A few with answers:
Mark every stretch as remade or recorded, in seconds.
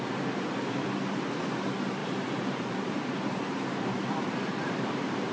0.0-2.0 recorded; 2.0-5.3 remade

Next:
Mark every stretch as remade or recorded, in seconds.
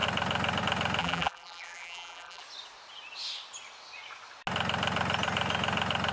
0.0-1.0 recorded; 1.0-2.4 remade; 2.4-6.1 recorded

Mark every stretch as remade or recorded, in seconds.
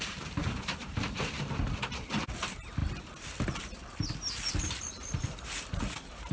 0.0-6.3 remade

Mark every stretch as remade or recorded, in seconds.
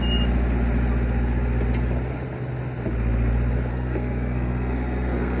0.0-3.7 recorded; 3.7-5.4 remade